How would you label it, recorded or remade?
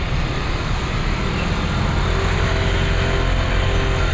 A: recorded